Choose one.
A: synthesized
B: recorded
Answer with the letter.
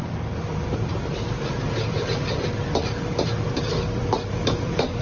A